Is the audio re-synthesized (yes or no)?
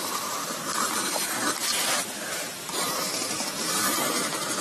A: yes